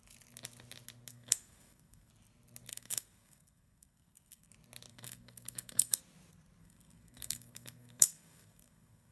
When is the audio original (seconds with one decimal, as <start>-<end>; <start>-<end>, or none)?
0.0-1.1; 2.1-2.7; 4.5-4.9; 6.0-6.6